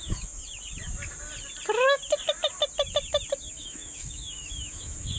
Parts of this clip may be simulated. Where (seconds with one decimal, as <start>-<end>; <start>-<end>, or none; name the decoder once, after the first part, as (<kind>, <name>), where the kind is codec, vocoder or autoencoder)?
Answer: 0.0-0.4 (autoencoder, DAC-VAE); 3.5-5.2